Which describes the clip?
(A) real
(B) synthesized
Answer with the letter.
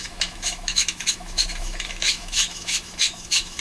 B